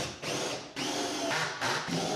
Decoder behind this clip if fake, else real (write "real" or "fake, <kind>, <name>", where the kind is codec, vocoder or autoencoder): real